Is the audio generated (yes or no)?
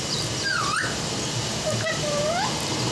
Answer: no